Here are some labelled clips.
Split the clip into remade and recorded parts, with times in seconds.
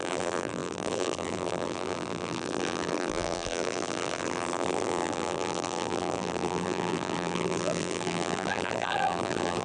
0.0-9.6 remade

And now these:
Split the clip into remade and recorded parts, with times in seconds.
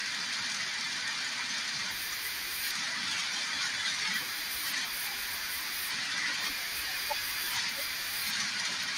0.0-1.6 recorded; 1.6-3.2 remade; 3.2-4.1 recorded; 4.1-9.0 remade